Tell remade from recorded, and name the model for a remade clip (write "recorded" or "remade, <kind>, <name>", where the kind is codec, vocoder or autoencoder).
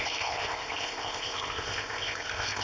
remade, codec, ZipCodec